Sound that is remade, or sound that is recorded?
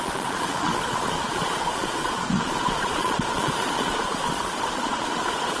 remade